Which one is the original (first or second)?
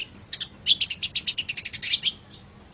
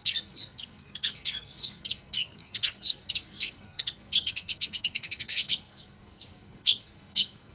first